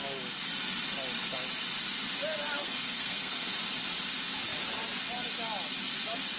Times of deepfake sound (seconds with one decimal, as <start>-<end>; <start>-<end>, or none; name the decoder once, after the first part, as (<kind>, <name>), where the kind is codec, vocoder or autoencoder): 2.6-3.5 (codec, SNAC)